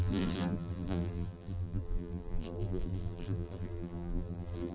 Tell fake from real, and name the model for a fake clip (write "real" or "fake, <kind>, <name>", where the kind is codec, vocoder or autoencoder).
fake, vocoder, BigVGAN v2